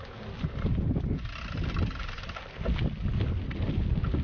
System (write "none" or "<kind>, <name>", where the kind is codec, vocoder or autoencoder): none